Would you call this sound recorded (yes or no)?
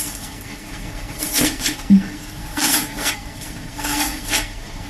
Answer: no